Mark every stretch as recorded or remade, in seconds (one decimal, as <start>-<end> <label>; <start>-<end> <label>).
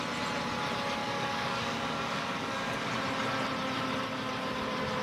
0.0-1.0 recorded; 1.0-2.9 remade; 2.9-5.0 recorded